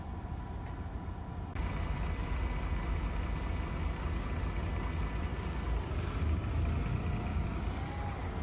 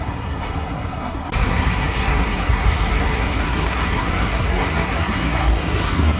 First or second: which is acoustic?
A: first